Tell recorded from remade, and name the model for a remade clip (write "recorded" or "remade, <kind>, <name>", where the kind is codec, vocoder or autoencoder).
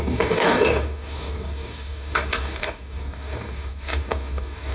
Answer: remade, codec, DAC